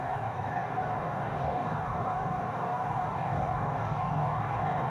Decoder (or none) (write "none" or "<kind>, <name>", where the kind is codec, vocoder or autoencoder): codec, DAC